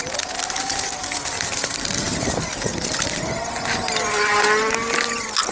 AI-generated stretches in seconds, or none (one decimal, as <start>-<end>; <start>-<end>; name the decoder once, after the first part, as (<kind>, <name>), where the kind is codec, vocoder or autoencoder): none

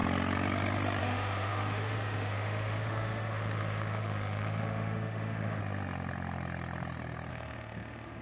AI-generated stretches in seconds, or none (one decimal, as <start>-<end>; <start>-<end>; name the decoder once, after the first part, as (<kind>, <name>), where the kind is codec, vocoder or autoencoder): 1.0-5.6 (autoencoder, DAC-VAE); 7.3-8.2

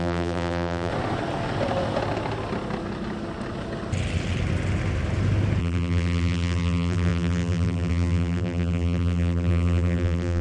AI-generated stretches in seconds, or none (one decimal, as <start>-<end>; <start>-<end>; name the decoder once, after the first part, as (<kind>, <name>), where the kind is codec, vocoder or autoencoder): 0.0-0.9 (vocoder, BigVGAN v2); 5.6-10.4